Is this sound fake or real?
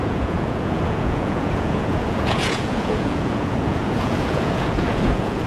fake